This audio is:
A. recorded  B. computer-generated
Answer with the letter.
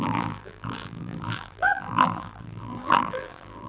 B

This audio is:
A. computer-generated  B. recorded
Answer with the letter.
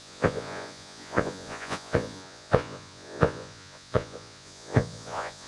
A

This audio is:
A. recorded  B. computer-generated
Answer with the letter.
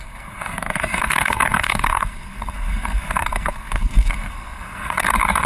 B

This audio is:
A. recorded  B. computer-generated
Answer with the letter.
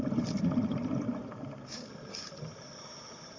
A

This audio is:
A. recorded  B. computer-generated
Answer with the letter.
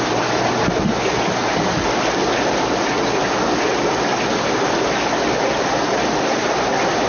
A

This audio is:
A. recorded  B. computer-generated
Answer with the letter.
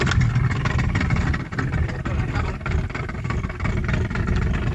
A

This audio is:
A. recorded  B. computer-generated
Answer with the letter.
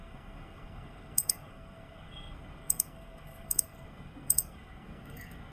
B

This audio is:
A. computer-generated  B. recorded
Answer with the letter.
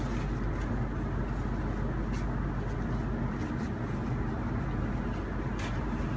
B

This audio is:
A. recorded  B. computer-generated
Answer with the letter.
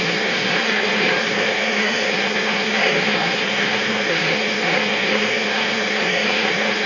B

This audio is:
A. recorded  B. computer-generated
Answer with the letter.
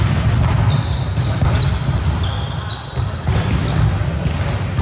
A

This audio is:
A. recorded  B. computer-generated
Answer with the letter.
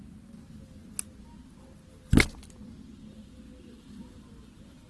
A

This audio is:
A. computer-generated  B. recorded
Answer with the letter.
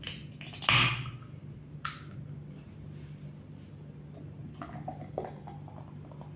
B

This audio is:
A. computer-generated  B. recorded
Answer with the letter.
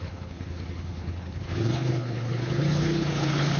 A